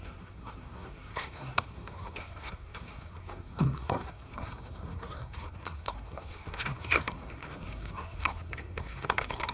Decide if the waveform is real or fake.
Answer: fake